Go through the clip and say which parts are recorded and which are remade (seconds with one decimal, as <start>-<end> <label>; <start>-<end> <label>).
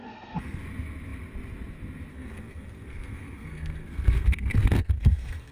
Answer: 0.0-0.6 remade; 0.6-2.1 recorded; 2.1-5.5 remade